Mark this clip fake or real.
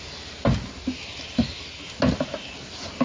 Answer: real